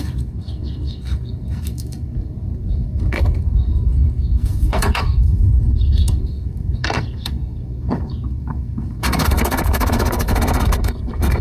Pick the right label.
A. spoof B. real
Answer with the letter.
A